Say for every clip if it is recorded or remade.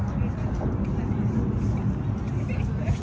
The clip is recorded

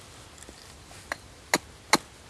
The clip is recorded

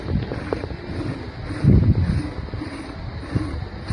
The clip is recorded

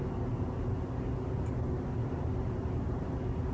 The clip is recorded